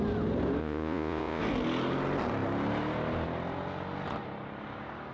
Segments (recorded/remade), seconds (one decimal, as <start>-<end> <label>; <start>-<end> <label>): 0.0-0.6 recorded; 0.6-1.4 remade; 1.4-5.1 recorded